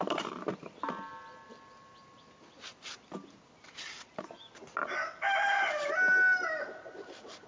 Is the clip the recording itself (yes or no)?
yes